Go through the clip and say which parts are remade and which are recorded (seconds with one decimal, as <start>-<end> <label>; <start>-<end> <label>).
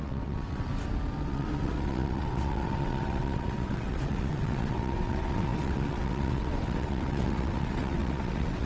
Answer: 0.0-0.7 remade; 0.7-1.2 recorded; 1.2-8.7 remade